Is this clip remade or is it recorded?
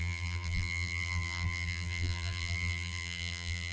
remade